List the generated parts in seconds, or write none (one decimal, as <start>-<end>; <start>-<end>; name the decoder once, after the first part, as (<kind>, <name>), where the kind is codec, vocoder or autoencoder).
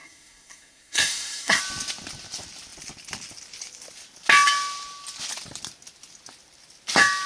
0.0-1.6 (codec, SNAC)